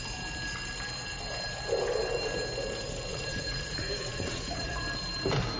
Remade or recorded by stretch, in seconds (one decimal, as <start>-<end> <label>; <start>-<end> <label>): 0.0-3.1 recorded; 3.1-4.8 remade; 4.8-5.6 recorded